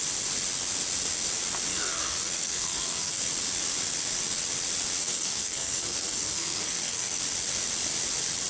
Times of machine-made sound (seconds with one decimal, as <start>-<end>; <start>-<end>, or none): 1.7-3.2; 5.0-7.2